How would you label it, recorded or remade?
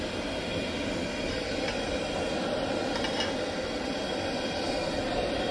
recorded